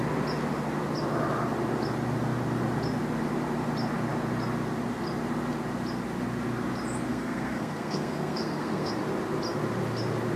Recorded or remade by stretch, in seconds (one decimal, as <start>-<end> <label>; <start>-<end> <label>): 0.0-7.1 recorded; 7.1-8.9 remade; 8.9-10.4 recorded

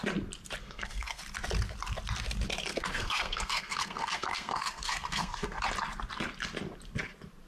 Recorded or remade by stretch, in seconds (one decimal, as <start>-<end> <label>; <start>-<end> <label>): 0.0-0.6 recorded; 0.6-1.2 remade; 1.2-2.7 recorded; 2.7-5.6 remade; 5.6-7.5 recorded